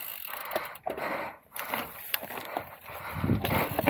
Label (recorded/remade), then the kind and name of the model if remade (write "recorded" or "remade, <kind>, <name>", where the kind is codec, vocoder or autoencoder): recorded